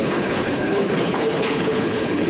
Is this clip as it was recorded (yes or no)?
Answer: no